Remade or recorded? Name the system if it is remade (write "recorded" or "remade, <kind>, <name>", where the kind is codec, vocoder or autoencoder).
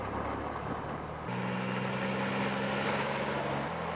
recorded